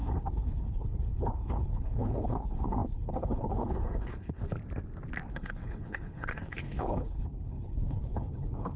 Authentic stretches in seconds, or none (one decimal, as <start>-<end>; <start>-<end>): 4.6-5.3